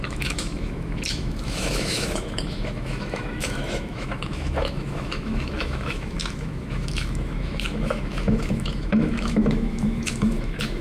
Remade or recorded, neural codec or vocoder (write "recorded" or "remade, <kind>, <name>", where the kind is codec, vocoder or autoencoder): remade, autoencoder, DAC-VAE